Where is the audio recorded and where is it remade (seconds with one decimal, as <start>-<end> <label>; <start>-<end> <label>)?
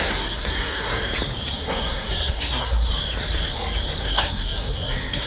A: 0.0-0.9 remade; 0.9-1.5 recorded; 1.5-2.9 remade; 2.9-4.0 recorded; 4.0-5.3 remade